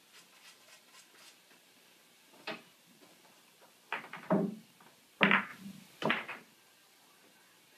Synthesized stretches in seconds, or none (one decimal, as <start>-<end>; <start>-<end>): none